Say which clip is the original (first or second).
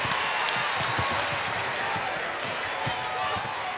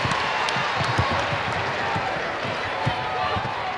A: first